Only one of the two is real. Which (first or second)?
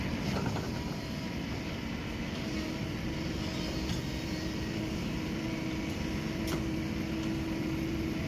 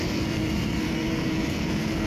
first